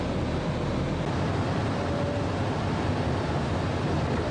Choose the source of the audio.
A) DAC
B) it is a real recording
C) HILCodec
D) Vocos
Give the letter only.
B